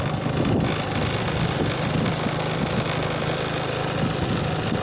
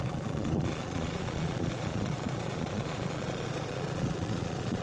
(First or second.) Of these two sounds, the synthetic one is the second